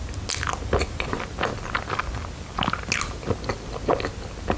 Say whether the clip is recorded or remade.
recorded